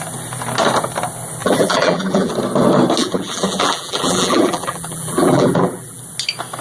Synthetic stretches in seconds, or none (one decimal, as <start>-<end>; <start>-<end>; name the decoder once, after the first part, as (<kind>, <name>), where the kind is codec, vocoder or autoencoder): 1.4-2.3 (vocoder, BigVGAN v2); 3.0-6.0